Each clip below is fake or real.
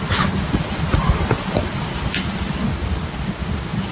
real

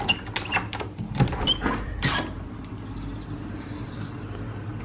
real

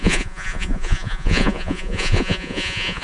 fake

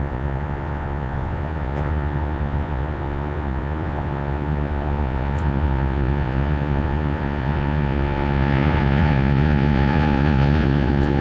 fake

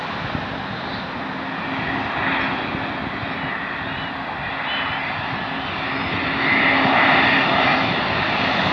real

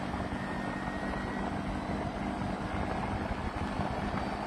real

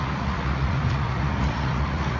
fake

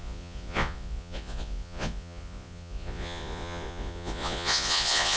fake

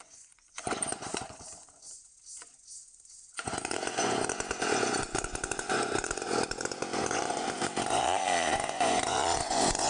fake